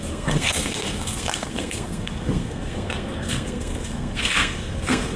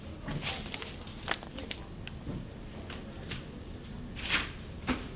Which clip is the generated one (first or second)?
first